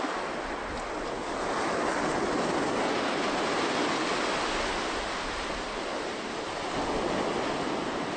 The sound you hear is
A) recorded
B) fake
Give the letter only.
A